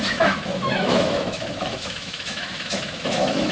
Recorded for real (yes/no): no